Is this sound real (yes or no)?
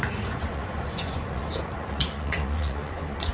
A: no